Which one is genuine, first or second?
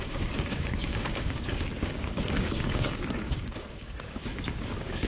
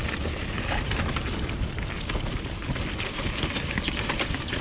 second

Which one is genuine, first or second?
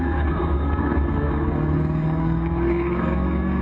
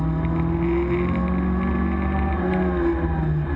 second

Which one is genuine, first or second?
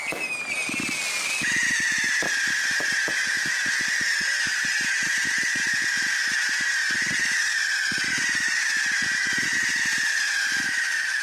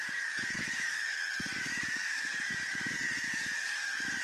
first